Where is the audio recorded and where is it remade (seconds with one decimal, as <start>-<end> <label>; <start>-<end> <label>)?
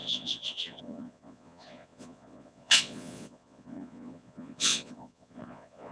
0.0-5.9 remade